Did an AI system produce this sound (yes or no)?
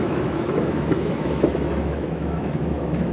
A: yes